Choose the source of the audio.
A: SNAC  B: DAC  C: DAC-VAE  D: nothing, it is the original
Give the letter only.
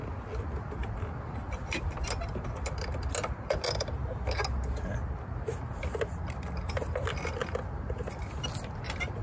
D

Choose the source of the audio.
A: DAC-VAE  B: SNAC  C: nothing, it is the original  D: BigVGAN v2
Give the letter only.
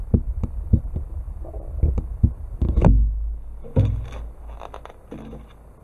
C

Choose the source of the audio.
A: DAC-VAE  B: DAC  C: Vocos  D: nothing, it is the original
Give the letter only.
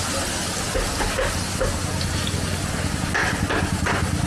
D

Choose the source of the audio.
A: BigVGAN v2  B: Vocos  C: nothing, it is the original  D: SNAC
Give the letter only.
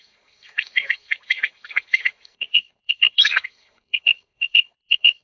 D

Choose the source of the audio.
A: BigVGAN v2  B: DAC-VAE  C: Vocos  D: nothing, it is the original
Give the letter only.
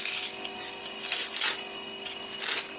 D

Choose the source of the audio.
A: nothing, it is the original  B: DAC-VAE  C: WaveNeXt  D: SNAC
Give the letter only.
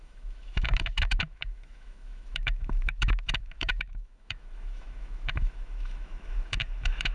B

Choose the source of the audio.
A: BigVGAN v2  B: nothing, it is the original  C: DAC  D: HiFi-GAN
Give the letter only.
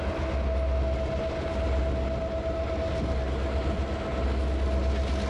B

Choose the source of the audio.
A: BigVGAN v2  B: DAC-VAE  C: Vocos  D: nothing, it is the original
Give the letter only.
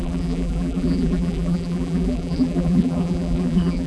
A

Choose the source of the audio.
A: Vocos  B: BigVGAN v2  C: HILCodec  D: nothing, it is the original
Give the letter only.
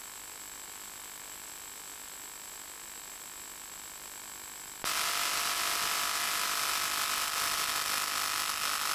D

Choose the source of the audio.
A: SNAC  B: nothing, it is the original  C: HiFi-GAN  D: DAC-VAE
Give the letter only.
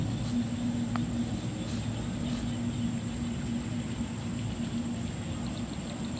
B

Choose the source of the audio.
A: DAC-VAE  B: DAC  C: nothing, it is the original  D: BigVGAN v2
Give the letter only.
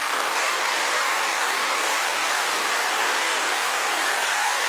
B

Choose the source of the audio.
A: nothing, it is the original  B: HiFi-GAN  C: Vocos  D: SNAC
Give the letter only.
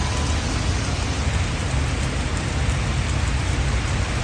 A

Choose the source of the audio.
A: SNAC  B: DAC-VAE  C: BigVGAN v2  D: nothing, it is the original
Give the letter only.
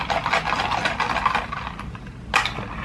D